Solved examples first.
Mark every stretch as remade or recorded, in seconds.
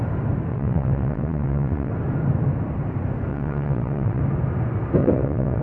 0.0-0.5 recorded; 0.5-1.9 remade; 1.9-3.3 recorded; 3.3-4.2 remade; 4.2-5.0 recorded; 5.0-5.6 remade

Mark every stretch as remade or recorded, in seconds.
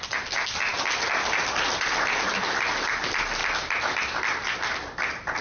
0.0-5.4 recorded